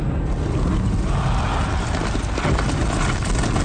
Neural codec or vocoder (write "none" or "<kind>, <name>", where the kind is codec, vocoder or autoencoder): none